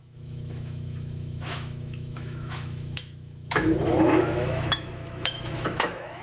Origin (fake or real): fake